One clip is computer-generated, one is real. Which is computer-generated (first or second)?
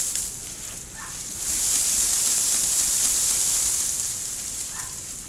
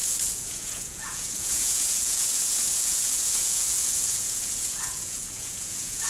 second